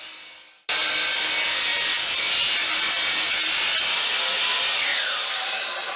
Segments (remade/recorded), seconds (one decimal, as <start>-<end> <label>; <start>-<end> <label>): 0.0-1.7 recorded; 1.7-2.4 remade; 2.4-4.9 recorded; 4.9-6.0 remade